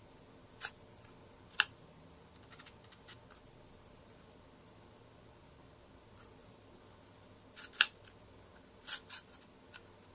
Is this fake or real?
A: real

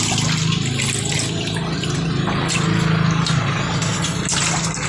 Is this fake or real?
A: real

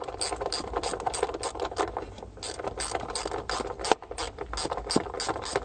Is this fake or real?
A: real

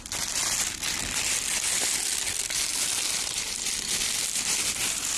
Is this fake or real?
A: real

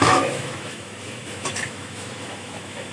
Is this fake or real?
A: fake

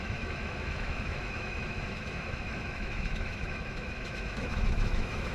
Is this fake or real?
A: fake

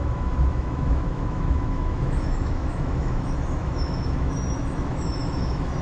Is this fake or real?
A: fake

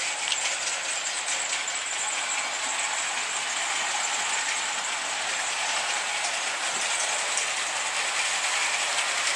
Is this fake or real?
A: real